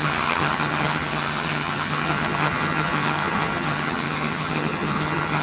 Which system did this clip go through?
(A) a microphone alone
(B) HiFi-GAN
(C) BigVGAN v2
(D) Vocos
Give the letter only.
B